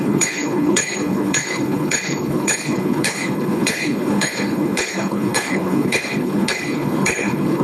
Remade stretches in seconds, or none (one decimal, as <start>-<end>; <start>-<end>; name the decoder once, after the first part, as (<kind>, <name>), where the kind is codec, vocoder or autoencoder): 0.0-7.6 (codec, HILCodec)